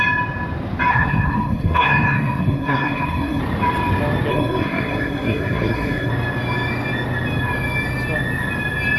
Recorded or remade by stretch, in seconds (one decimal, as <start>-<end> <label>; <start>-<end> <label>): 0.0-0.9 recorded; 0.9-3.4 remade; 3.4-4.3 recorded; 4.3-6.1 remade; 6.1-9.0 recorded